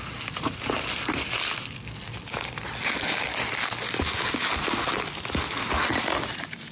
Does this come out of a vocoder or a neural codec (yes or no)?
no